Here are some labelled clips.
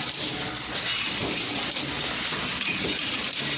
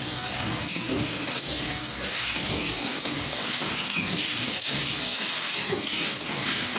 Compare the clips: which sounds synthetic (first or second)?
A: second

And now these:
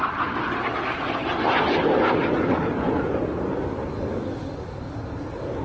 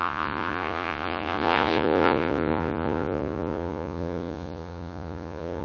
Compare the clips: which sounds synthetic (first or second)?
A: second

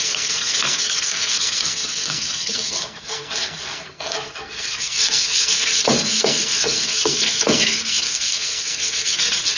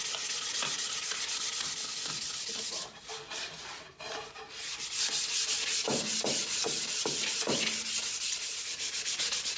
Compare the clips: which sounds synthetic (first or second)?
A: first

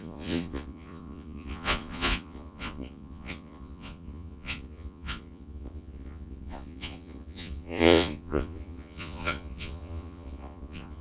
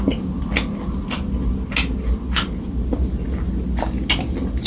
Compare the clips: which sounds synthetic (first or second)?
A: first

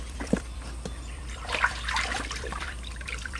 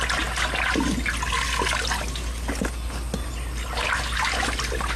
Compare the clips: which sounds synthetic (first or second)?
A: first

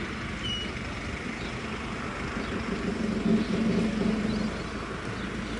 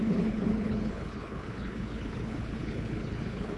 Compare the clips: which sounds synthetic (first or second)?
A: second